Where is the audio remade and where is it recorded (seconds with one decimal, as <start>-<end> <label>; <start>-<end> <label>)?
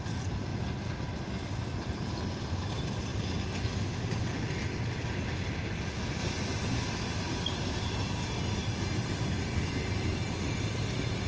0.0-0.5 recorded; 0.5-1.2 remade; 1.2-6.2 recorded; 6.2-8.0 remade; 8.0-11.3 recorded